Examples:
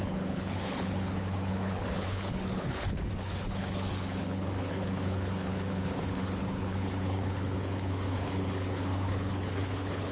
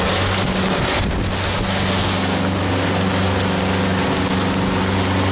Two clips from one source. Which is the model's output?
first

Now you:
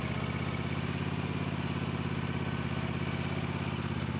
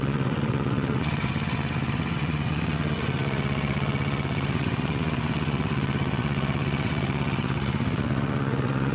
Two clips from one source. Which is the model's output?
second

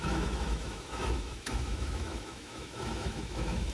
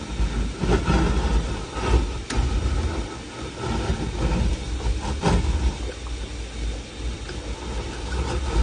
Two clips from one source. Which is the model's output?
first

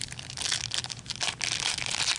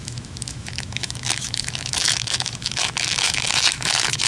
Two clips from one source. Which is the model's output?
second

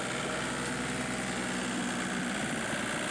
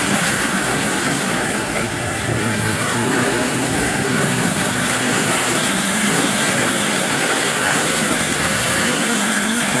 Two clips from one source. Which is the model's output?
second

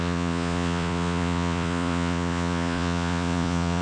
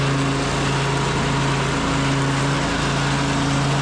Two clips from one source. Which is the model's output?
first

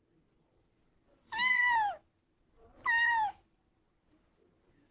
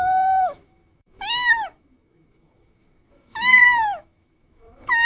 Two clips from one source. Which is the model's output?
second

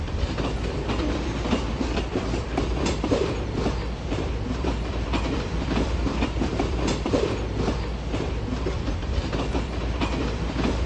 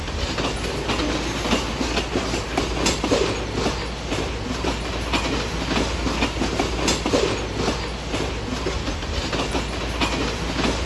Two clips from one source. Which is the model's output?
first